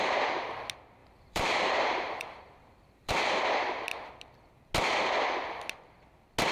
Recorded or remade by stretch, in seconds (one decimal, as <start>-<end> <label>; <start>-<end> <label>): 0.0-1.0 recorded; 1.0-3.1 remade; 3.1-6.5 recorded